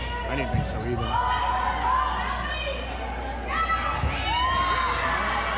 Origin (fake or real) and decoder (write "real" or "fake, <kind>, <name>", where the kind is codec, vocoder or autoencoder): real